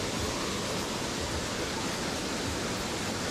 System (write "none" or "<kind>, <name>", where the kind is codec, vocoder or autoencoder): none